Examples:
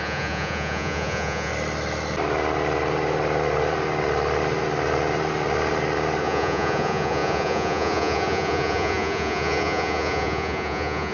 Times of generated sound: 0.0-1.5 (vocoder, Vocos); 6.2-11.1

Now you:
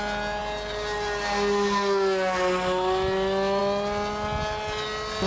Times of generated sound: none

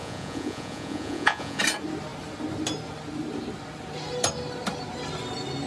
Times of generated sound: 0.0-1.6 (vocoder, Vocos)

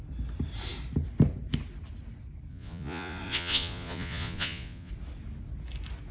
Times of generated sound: 2.5-4.9 (vocoder, Vocos)

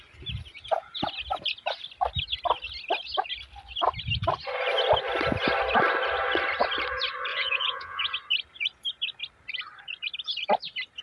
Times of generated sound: 7.3-8.1 (vocoder, Vocos)

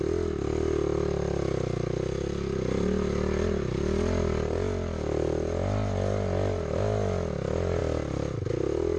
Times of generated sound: none